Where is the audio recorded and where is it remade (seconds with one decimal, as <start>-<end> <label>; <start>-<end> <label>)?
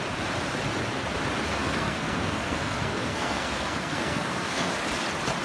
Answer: 0.0-1.5 recorded; 1.5-4.7 remade; 4.7-5.4 recorded